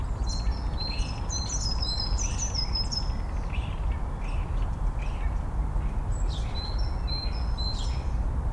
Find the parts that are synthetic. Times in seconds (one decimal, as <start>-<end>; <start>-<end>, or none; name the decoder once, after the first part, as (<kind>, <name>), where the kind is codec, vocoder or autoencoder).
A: none